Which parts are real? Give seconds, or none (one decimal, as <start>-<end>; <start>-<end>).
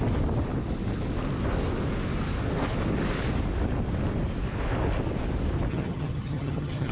0.0-5.7